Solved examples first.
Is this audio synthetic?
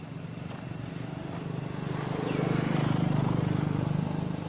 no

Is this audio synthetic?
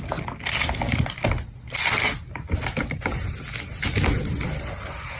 no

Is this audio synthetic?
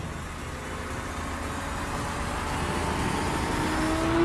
no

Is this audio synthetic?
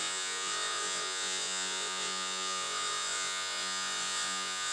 yes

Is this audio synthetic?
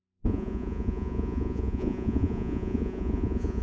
yes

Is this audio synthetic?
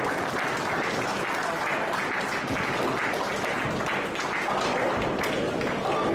no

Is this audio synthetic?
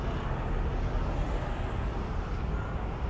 no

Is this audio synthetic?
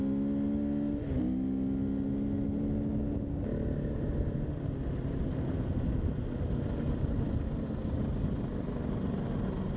no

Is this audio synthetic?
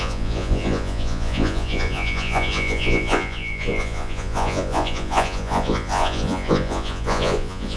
yes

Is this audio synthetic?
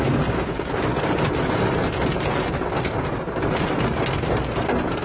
no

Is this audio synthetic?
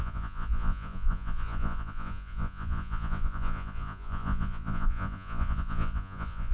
yes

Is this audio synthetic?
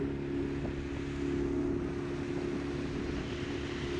no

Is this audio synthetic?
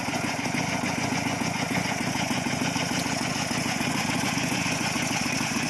yes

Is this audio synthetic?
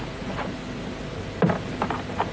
no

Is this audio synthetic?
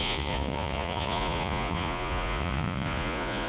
yes